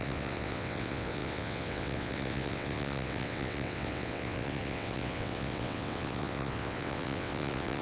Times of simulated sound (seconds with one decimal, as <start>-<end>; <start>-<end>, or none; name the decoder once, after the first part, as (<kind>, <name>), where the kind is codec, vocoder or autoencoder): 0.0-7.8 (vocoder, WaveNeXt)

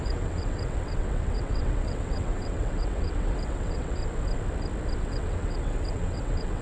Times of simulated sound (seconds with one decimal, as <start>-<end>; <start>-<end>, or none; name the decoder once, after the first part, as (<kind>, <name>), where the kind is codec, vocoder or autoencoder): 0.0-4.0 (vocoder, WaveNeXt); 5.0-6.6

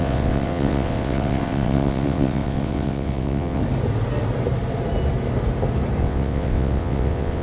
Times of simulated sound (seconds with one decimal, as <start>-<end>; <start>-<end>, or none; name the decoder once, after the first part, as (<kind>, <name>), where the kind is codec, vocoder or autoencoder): 0.0-3.6 (vocoder, WaveNeXt); 6.0-7.4

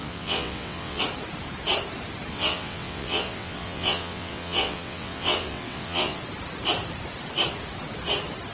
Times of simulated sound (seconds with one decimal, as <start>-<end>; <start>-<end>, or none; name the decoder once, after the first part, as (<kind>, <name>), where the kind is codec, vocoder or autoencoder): 0.0-1.0 (vocoder, WaveNeXt); 2.3-6.2

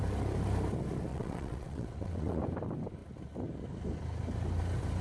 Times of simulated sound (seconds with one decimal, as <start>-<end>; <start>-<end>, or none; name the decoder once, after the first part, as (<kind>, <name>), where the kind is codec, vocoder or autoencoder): 1.1-2.4 (vocoder, WaveNeXt)

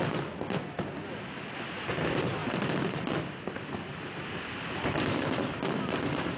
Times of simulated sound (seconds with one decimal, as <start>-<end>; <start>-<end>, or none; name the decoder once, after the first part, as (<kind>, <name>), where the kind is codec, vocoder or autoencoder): none

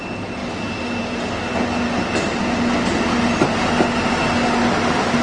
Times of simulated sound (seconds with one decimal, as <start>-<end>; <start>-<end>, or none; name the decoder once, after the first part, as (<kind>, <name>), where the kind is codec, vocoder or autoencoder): none

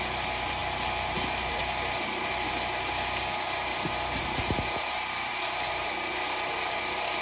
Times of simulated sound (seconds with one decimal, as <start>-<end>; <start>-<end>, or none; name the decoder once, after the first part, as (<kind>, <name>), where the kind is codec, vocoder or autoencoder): none